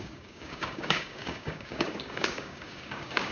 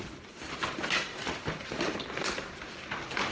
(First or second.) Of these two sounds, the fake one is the first